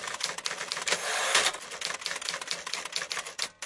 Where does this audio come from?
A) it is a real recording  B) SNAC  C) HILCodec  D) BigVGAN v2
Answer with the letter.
A